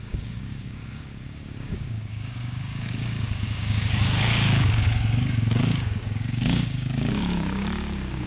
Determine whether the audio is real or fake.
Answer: fake